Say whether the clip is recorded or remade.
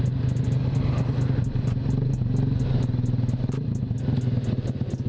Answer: recorded